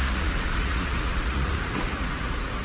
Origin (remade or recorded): remade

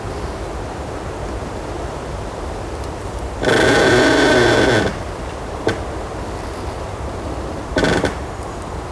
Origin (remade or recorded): recorded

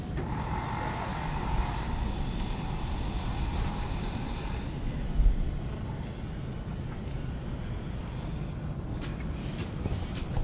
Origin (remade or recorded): recorded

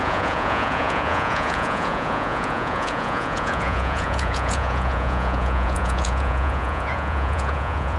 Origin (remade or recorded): remade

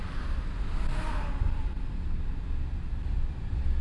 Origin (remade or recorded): recorded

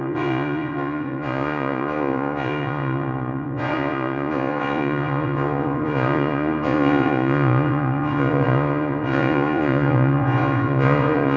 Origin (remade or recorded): remade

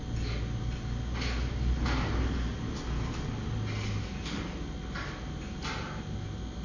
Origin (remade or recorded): recorded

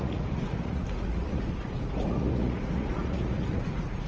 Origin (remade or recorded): remade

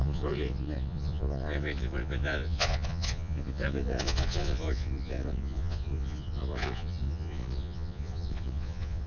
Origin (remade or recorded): remade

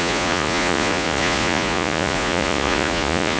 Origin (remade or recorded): remade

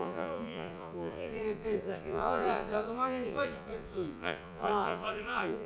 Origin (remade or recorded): remade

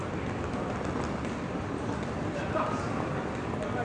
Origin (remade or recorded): recorded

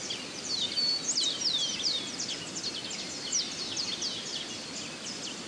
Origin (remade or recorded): recorded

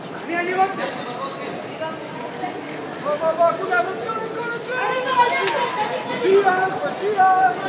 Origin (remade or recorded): recorded